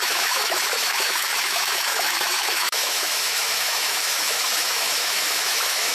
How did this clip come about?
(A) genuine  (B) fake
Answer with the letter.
B